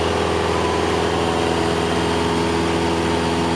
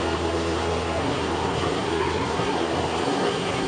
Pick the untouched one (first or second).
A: first